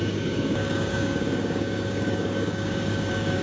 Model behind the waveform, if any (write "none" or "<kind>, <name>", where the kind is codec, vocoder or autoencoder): codec, DAC